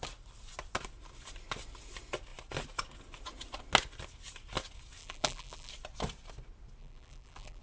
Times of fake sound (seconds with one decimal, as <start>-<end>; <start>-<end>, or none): 5.0-5.7; 6.8-7.6